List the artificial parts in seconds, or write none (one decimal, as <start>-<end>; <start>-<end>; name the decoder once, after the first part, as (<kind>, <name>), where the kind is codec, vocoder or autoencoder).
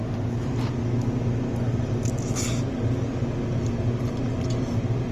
none